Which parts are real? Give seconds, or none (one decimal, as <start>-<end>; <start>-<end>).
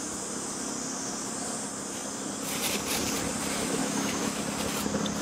0.0-3.8; 4.4-5.2